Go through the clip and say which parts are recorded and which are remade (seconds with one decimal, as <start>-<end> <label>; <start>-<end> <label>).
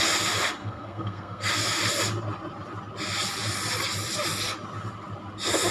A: 0.0-0.6 recorded; 0.6-1.5 remade; 1.5-5.7 recorded